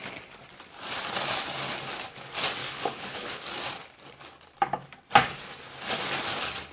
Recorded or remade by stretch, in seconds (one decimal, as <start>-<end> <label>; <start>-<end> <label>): 0.0-2.6 recorded; 2.6-3.4 remade; 3.4-6.7 recorded